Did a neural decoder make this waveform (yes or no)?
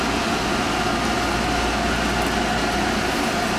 no